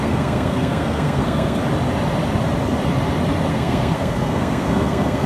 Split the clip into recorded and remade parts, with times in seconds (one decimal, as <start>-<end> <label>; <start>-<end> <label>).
0.0-1.6 remade; 1.6-3.5 recorded; 3.5-5.3 remade